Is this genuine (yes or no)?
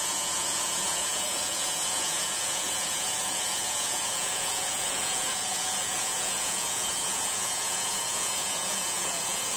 no